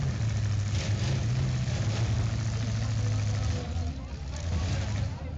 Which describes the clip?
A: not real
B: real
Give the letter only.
B